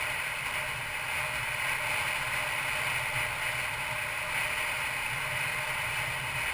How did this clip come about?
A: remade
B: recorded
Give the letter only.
B